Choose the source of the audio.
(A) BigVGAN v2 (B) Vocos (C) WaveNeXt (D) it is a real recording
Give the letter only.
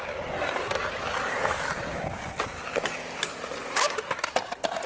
D